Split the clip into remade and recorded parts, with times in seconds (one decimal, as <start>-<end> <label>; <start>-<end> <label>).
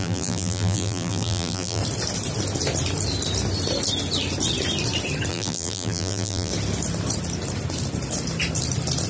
0.0-1.8 remade; 1.8-5.3 recorded; 5.3-6.5 remade; 6.5-9.1 recorded